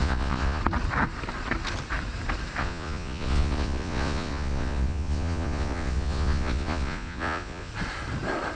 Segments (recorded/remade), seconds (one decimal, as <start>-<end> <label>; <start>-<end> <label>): 0.0-0.6 remade; 0.6-2.6 recorded; 2.6-7.7 remade; 7.7-8.6 recorded